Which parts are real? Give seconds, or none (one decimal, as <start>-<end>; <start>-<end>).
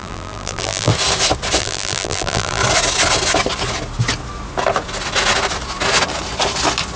0.9-1.6; 2.6-7.0